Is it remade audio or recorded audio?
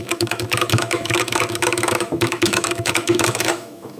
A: remade